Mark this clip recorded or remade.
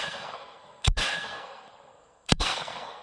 remade